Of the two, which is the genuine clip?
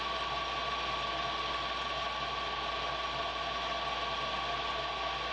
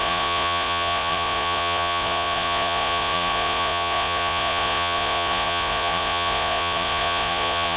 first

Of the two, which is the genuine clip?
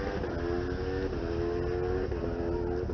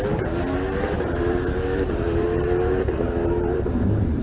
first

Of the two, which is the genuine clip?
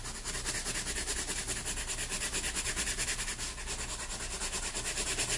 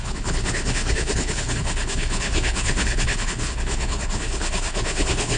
first